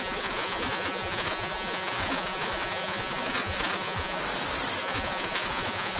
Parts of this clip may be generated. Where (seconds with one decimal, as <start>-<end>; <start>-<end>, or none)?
0.0-4.2; 4.8-6.0